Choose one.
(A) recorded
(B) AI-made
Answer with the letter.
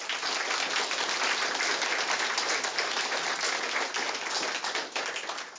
A